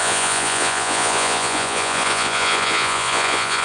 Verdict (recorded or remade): remade